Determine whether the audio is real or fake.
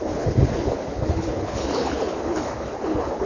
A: fake